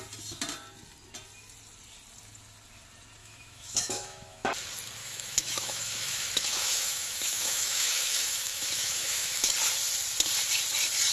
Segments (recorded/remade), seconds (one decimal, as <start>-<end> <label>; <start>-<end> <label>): 0.0-3.2 recorded; 3.2-4.5 remade; 4.5-5.0 recorded; 5.0-9.5 remade; 9.5-11.1 recorded